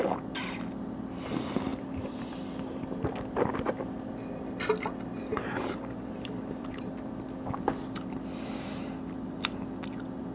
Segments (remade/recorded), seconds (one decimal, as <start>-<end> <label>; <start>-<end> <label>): 0.0-1.7 recorded; 1.7-2.3 remade; 2.3-5.3 recorded; 5.3-6.9 remade; 6.9-10.3 recorded